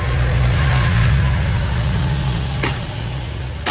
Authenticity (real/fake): fake